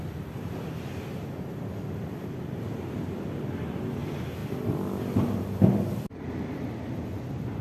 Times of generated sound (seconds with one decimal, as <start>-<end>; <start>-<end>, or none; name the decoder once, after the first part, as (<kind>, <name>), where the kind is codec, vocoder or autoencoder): none